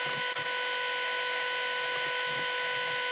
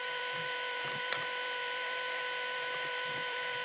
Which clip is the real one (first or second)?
first